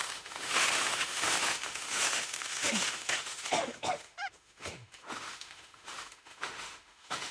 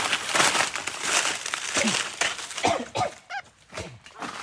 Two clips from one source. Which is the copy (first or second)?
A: first